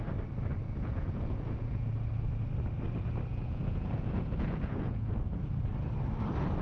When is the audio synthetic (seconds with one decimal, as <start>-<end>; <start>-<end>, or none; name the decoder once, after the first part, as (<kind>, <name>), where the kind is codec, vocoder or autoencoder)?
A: 0.6-1.9 (vocoder, Vocos); 3.3-5.1